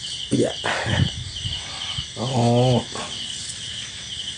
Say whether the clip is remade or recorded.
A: recorded